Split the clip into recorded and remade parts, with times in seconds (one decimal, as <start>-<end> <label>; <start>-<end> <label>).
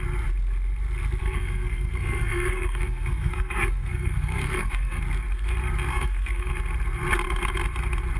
0.0-1.2 recorded; 1.2-5.0 remade; 5.0-5.9 recorded; 5.9-6.5 remade; 6.5-8.2 recorded